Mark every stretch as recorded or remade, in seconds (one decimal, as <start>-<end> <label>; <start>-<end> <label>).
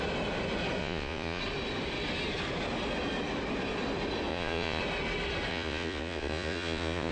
0.0-0.8 recorded; 0.8-1.4 remade; 1.4-4.3 recorded; 4.3-4.8 remade; 4.8-5.5 recorded; 5.5-7.1 remade